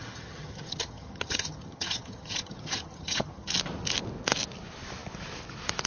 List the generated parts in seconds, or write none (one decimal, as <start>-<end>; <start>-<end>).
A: 0.0-3.5